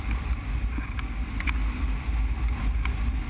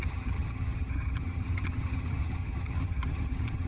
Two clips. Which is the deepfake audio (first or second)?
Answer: second